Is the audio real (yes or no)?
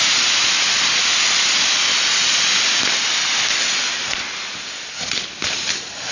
yes